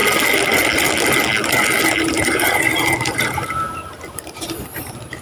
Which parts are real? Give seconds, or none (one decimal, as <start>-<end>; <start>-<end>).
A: 0.0-2.0